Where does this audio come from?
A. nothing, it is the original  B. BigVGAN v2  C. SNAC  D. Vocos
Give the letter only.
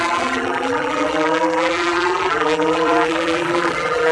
B